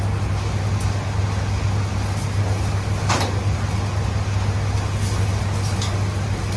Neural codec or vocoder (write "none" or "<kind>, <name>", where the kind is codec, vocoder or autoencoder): none